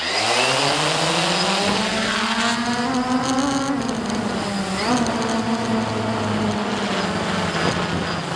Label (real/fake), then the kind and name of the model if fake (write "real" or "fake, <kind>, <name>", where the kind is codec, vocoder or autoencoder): real